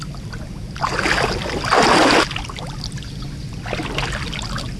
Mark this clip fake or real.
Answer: real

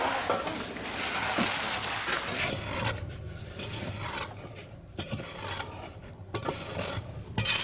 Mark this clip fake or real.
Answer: real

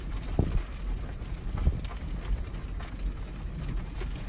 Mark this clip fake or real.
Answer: real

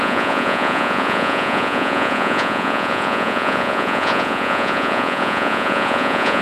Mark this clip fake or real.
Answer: fake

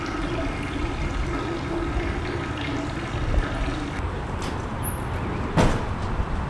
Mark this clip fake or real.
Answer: real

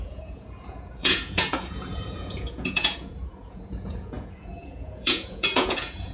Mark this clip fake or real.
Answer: fake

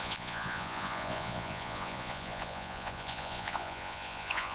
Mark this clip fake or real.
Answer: fake